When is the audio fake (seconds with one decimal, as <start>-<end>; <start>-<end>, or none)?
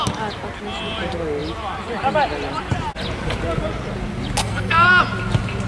4.4-5.0